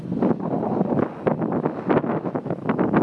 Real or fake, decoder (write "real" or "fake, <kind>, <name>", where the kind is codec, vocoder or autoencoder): real